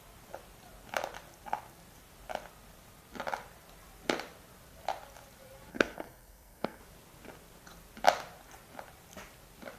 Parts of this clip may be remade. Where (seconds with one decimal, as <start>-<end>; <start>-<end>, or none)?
5.7-6.8